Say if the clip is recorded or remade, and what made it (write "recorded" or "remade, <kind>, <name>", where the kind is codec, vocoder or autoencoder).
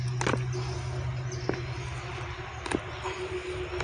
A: recorded